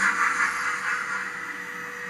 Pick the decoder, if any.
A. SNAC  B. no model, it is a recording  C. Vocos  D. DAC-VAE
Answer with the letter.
B